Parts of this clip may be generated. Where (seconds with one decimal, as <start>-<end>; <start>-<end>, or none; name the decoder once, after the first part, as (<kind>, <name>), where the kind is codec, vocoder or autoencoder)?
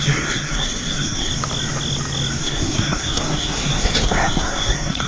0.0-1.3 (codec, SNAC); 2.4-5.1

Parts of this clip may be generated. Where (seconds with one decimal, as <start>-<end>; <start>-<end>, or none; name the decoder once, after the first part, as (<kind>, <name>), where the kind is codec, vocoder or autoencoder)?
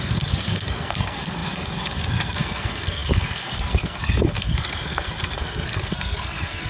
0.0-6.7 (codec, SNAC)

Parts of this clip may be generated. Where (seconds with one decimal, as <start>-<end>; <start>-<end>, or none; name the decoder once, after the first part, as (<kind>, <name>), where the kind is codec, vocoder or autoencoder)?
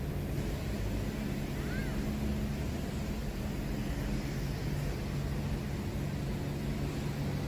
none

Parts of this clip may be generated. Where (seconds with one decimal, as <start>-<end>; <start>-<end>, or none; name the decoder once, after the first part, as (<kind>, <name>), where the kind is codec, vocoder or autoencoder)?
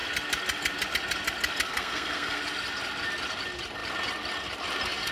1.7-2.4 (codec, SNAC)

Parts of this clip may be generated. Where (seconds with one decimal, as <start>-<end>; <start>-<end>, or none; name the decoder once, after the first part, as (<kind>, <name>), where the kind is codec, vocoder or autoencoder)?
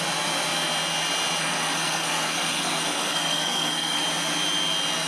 1.4-4.0 (codec, SNAC)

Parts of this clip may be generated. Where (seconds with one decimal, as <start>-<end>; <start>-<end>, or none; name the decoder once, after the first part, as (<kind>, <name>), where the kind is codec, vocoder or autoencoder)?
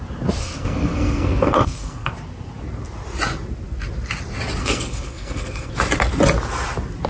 0.4-2.1 (codec, SNAC); 4.6-5.7